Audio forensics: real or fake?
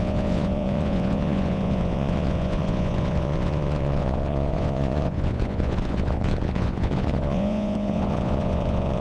fake